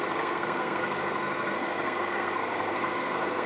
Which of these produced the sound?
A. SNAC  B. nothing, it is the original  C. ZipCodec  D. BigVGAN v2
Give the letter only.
A